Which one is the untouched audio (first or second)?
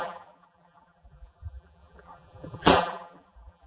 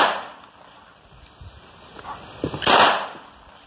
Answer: second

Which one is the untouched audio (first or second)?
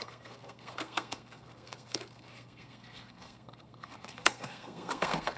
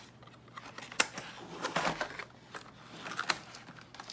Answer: second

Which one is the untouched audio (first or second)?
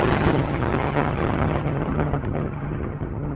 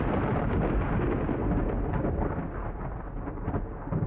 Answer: second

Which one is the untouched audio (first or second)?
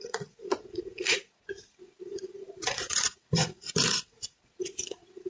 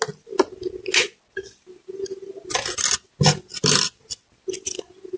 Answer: second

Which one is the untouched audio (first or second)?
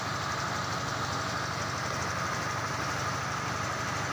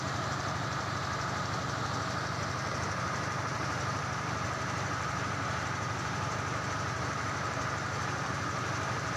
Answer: first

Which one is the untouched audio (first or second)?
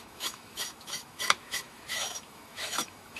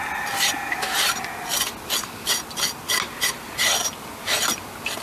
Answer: second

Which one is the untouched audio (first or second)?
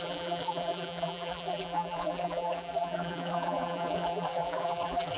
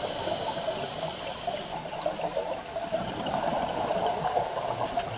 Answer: second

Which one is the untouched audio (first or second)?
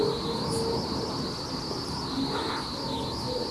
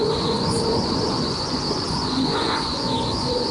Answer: first